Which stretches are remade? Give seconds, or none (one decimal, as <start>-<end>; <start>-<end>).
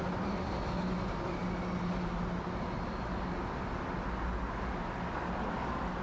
none